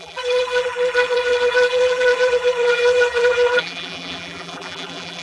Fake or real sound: fake